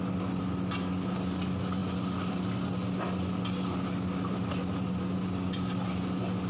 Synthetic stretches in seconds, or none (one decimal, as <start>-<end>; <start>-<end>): none